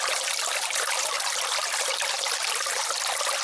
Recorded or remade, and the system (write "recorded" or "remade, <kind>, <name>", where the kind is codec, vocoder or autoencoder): recorded